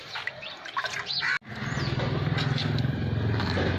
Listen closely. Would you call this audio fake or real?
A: real